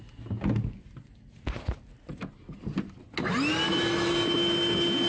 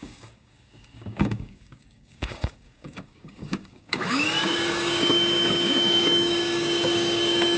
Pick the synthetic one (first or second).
second